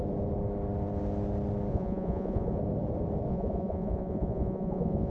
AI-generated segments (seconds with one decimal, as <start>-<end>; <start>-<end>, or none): 1.7-2.6; 3.3-5.1